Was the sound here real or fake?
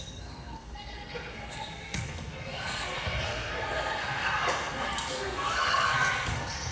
fake